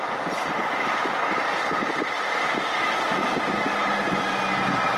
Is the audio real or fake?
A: real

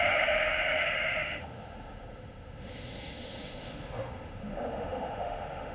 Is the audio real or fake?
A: fake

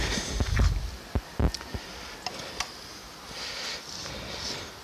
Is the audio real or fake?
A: real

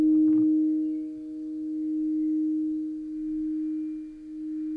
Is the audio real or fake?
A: real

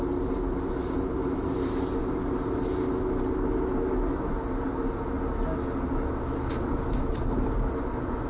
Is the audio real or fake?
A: real